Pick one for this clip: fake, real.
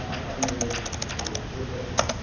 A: real